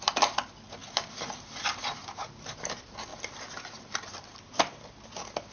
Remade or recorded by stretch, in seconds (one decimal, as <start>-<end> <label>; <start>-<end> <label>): 0.0-0.8 recorded; 0.8-2.2 remade; 2.2-3.1 recorded; 3.1-4.5 remade; 4.5-5.5 recorded